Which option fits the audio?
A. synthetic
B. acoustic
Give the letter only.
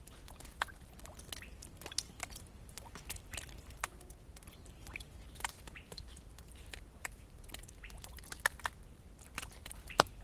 A